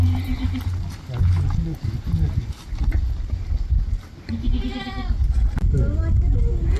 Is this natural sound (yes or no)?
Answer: yes